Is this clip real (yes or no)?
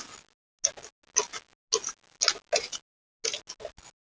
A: yes